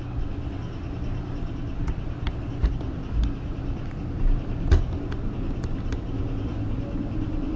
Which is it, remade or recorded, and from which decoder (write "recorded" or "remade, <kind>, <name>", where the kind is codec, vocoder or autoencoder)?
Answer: recorded